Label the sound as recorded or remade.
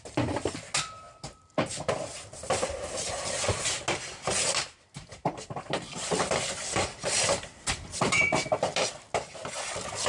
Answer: recorded